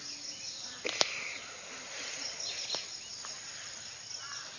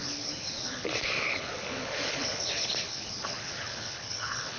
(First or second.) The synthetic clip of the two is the second